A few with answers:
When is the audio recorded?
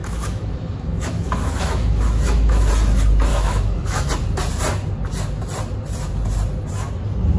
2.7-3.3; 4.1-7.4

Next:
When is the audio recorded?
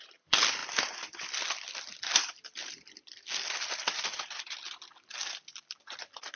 0.0-6.4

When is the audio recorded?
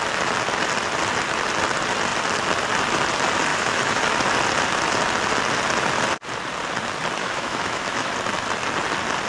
0.0-3.5; 4.0-7.2; 8.1-9.3